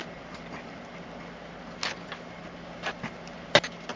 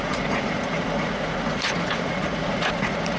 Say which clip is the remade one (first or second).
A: second